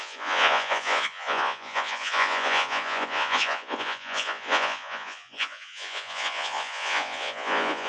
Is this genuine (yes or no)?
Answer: no